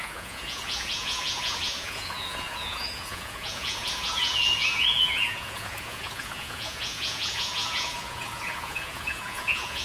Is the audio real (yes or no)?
no